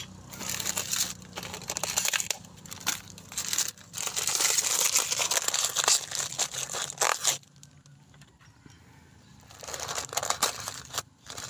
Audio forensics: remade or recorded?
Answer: recorded